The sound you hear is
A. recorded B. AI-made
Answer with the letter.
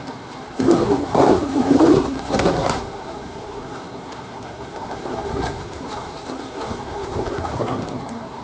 B